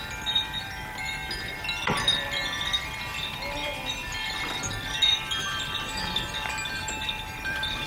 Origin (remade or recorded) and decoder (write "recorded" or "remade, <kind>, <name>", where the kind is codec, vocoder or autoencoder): remade, vocoder, BigVGAN v2